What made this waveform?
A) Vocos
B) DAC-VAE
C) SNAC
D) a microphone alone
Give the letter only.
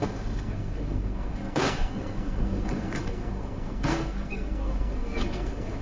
C